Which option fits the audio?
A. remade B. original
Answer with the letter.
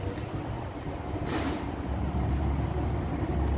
B